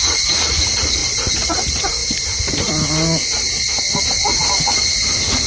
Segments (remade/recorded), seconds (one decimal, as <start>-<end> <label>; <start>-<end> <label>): 0.0-1.0 remade; 1.0-1.6 recorded; 1.6-2.0 remade; 2.0-4.8 recorded; 4.8-5.5 remade